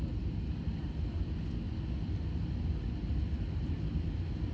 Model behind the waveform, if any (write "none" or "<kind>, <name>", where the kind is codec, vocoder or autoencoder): none